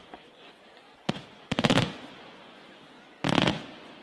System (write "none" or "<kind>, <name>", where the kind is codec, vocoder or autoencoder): vocoder, Vocos